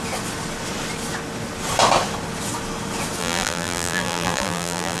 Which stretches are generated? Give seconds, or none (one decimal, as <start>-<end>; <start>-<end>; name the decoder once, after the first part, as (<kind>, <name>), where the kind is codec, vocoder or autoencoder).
3.2-5.0 (vocoder, BigVGAN v2)